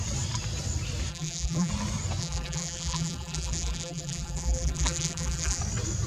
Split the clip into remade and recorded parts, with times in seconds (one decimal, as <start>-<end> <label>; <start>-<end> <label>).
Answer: 0.0-1.1 recorded; 1.1-1.7 remade; 1.7-2.2 recorded; 2.2-5.6 remade; 5.6-6.1 recorded